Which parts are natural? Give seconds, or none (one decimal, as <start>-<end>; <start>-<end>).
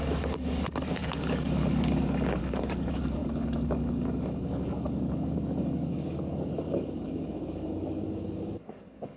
none